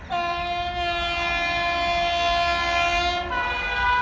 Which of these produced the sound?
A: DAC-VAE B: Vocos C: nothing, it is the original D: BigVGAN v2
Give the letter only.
C